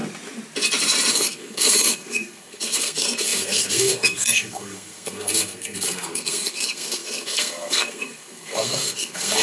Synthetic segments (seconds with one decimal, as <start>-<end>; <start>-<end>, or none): 1.1-9.4